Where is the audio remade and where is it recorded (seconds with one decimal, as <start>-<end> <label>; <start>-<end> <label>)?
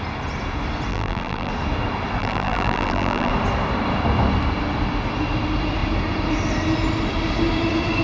0.0-0.9 recorded; 0.9-1.5 remade; 1.5-2.2 recorded; 2.2-3.3 remade; 3.3-8.0 recorded